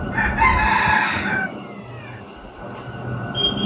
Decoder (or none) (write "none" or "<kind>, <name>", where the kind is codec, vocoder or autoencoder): none